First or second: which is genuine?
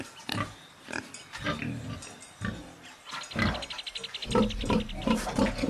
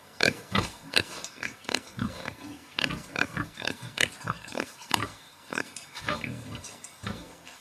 first